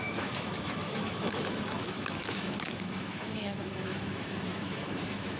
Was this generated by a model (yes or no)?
yes